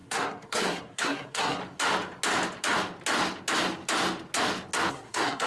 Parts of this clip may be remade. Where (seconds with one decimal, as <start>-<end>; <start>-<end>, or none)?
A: 0.0-1.6; 4.9-5.5